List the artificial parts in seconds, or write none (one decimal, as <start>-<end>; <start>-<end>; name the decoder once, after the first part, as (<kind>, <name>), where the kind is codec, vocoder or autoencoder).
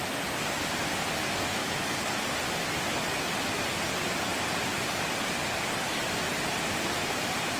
1.6-2.3 (codec, DAC); 5.4-6.0